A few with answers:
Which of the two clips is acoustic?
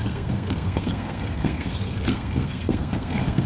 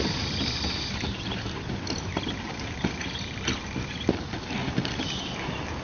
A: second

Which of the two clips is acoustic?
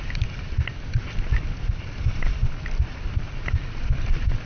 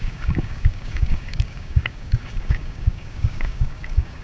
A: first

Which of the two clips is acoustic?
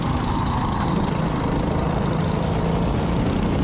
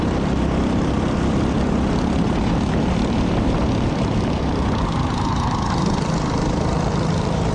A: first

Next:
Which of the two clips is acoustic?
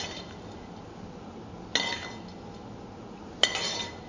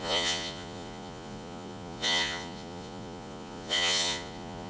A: first